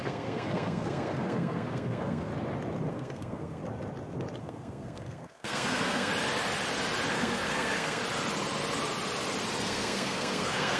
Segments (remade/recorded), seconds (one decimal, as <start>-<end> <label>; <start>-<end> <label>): 0.0-2.3 remade; 2.3-2.9 recorded; 2.9-3.6 remade; 3.6-4.4 recorded; 4.4-6.1 remade; 6.1-7.1 recorded; 7.1-8.0 remade; 8.0-9.6 recorded; 9.6-10.8 remade